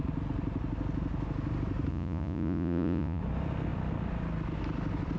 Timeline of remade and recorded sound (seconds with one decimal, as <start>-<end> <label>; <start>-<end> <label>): 0.0-1.9 recorded; 1.9-3.2 remade; 3.2-5.2 recorded